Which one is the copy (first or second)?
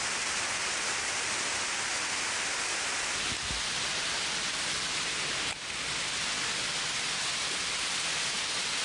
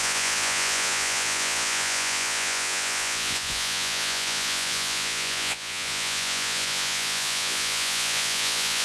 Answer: second